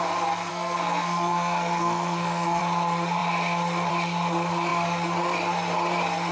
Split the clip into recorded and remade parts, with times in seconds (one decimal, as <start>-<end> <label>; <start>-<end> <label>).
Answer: 0.0-0.5 recorded; 0.5-2.6 remade; 2.6-6.3 recorded